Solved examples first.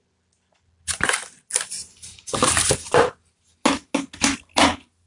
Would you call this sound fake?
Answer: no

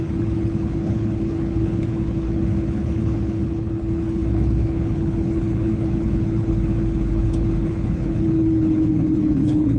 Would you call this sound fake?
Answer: yes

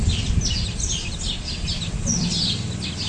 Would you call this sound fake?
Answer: no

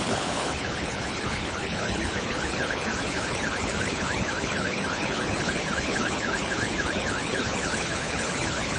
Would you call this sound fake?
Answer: yes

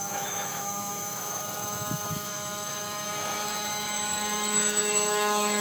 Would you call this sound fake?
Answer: yes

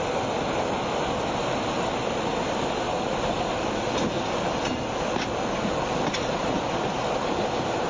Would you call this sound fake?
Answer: no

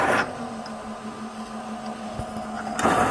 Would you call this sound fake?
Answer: no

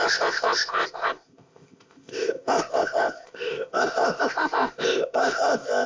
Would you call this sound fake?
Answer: yes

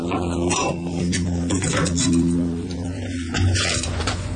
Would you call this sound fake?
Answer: yes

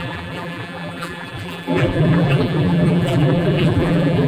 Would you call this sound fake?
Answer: yes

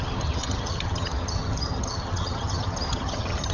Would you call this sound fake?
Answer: yes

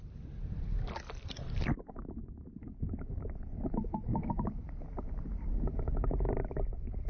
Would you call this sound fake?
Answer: no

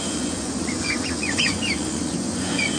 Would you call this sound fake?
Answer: yes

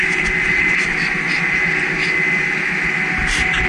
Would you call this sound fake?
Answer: no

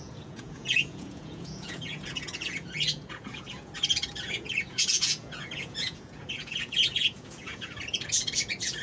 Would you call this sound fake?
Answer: yes